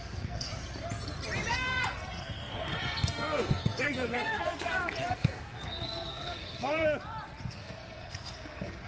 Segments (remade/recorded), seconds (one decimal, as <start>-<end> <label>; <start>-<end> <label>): 0.0-0.5 remade; 0.5-1.5 recorded; 1.5-6.8 remade; 6.8-7.5 recorded; 7.5-8.9 remade